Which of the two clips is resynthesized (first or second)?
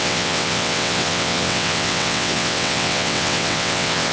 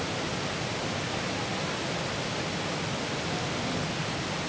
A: first